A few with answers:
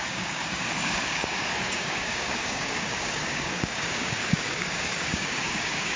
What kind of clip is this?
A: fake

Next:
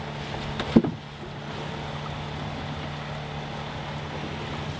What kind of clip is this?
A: real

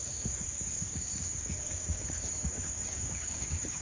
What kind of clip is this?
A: fake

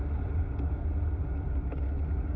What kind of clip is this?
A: real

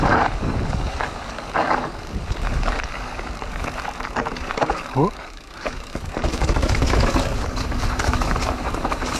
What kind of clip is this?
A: fake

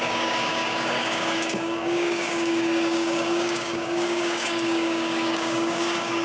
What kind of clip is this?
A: fake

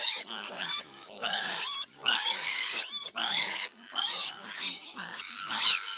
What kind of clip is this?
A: fake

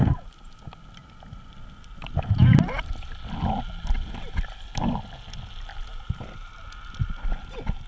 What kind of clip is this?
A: real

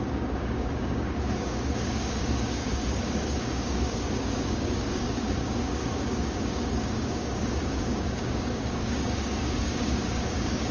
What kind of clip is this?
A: fake